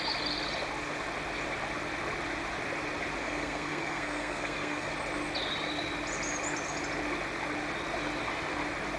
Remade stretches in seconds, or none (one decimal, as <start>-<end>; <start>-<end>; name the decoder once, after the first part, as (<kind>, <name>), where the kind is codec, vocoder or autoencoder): 3.2-4.9 (codec, SNAC)